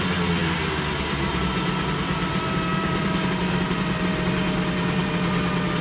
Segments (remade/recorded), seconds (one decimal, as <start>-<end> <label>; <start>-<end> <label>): 0.0-2.7 recorded; 2.7-3.6 remade; 3.6-5.8 recorded